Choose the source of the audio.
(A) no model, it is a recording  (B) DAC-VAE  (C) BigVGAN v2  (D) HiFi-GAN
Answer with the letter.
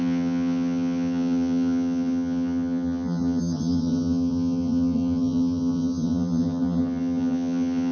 D